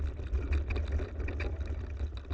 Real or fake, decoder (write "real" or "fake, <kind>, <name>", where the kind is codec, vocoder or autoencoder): real